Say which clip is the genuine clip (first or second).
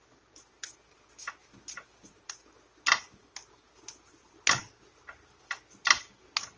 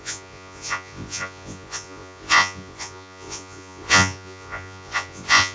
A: first